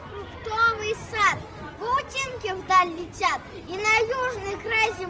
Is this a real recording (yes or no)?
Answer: yes